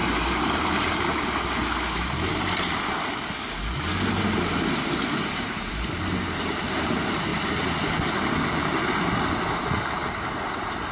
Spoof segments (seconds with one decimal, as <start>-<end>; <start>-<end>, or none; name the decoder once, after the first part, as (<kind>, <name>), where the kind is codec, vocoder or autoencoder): 0.0-2.3 (vocoder, BigVGAN v2); 5.3-7.3; 10.5-10.9

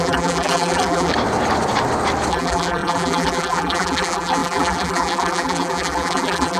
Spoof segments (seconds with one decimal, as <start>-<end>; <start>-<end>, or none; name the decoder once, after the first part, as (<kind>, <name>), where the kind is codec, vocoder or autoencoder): 0.0-1.1 (vocoder, BigVGAN v2); 2.3-6.6

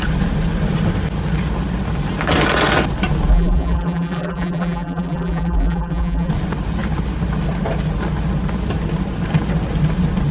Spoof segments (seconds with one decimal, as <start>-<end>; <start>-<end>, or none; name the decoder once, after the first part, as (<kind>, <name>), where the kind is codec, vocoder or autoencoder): 3.3-6.3 (vocoder, BigVGAN v2)

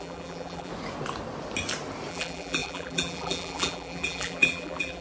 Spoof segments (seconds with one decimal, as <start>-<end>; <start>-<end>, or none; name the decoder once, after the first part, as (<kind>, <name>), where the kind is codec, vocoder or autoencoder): 0.0-0.7 (vocoder, BigVGAN v2); 2.1-5.0

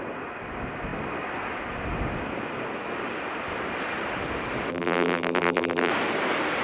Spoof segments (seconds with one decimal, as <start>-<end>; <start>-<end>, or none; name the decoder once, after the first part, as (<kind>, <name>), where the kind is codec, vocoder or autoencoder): 4.7-5.9 (vocoder, BigVGAN v2)

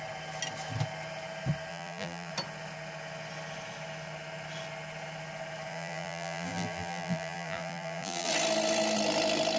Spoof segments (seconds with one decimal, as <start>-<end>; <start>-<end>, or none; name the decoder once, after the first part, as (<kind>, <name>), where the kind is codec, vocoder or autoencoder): 1.7-2.3 (vocoder, BigVGAN v2); 5.7-8.3

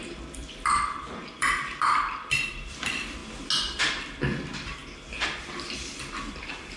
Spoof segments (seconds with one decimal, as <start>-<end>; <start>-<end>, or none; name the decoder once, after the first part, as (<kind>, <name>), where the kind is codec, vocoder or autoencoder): 0.0-3.2 (vocoder, BigVGAN v2); 4.2-4.8; 5.4-6.8

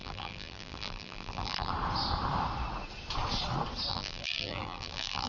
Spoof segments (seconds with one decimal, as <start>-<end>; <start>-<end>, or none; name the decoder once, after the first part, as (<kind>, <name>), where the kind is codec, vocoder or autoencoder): 0.0-1.7 (vocoder, BigVGAN v2); 3.9-5.3